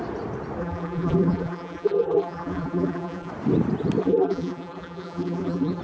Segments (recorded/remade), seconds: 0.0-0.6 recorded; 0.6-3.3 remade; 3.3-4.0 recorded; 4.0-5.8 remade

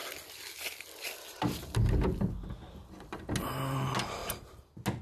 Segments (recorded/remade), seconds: 0.0-5.0 recorded

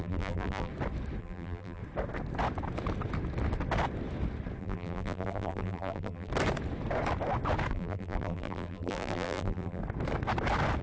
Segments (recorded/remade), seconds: 0.0-0.7 remade; 0.7-1.2 recorded; 1.2-1.8 remade; 1.8-4.6 recorded; 4.6-6.3 remade; 6.3-7.7 recorded; 7.7-9.8 remade; 9.8-10.8 recorded